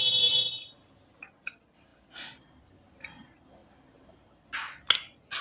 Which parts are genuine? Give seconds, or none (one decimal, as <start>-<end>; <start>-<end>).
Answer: 0.0-5.4